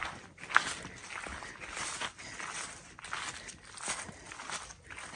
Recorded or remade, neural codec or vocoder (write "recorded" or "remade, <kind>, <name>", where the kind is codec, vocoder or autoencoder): recorded